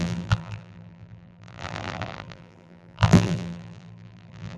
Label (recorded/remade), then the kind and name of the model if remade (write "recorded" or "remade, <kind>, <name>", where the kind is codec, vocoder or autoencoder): remade, vocoder, BigVGAN v2